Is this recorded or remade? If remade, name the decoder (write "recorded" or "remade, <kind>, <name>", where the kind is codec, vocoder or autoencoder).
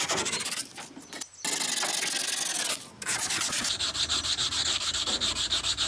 recorded